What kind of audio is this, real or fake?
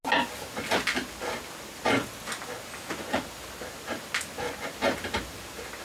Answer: real